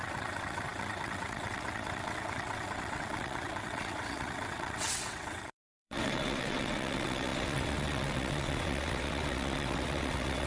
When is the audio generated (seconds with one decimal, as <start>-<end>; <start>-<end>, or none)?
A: 0.0-10.5